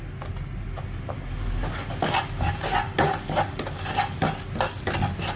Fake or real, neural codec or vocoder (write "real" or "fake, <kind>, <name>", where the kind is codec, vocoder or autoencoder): real